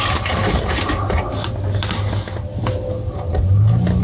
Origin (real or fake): real